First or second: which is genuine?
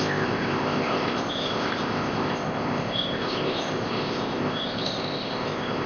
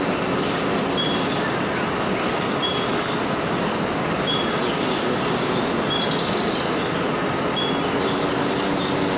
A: second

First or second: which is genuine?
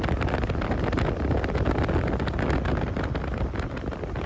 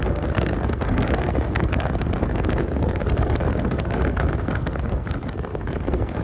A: first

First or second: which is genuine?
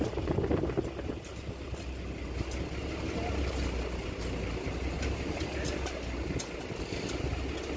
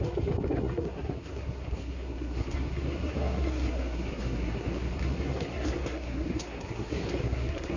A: first